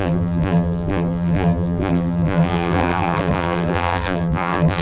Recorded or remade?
remade